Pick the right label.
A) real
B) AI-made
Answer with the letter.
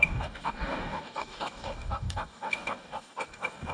B